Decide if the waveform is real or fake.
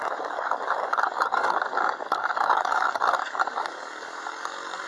fake